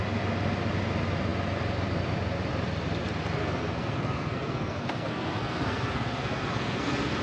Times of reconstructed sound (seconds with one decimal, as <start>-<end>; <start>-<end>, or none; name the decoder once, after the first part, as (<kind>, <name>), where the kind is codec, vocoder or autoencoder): 3.4-7.2 (codec, SNAC)